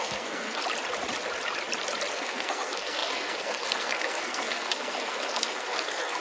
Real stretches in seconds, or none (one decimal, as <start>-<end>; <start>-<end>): 0.6-2.1